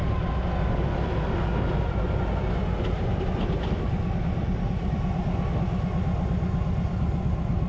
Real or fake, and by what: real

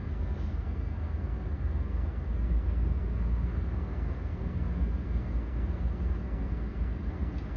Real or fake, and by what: fake, codec, SNAC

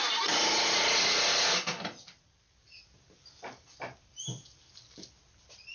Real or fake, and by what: real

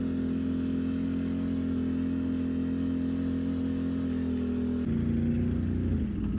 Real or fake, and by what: real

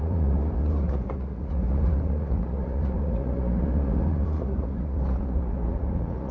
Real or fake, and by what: fake, vocoder, Vocos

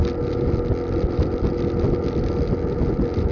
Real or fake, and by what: real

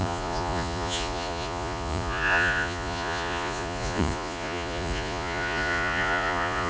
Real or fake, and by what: fake, vocoder, Vocos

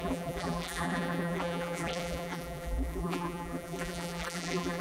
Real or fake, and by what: fake, vocoder, BigVGAN v2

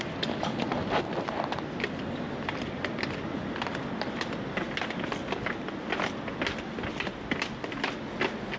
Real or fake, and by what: real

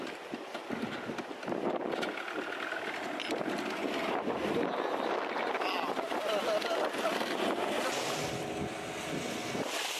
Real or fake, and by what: real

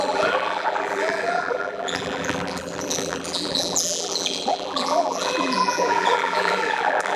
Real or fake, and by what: fake, vocoder, BigVGAN v2